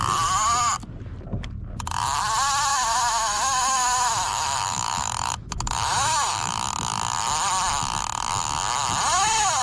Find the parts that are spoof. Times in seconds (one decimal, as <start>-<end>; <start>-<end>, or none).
2.7-6.5